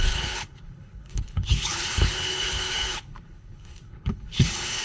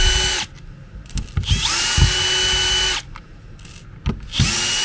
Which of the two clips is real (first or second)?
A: second